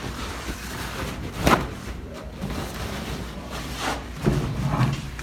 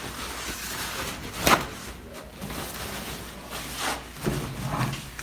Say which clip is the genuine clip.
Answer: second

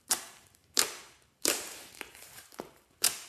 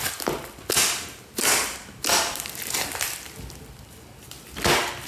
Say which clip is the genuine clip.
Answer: second